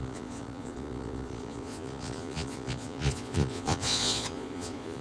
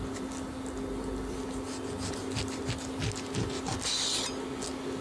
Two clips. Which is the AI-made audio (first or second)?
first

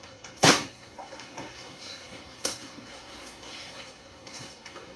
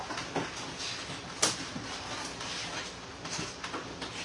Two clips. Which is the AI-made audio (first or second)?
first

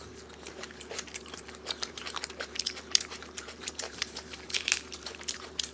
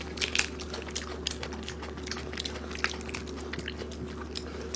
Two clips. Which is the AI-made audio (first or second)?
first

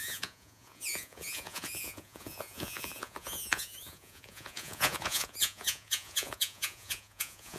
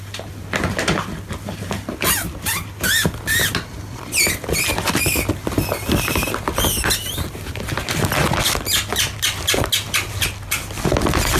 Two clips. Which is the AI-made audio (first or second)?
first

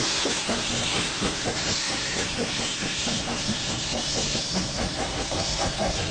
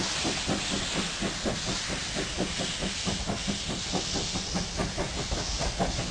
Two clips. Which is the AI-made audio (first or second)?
first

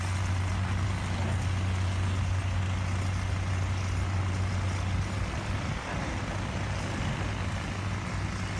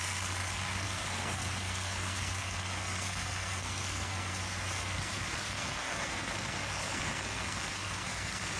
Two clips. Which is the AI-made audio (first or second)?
second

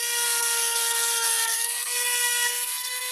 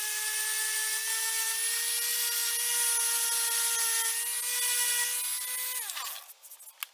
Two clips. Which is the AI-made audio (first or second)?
first